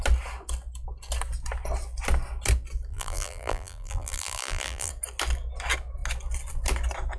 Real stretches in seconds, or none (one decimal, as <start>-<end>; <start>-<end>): 0.0-2.9; 4.9-7.2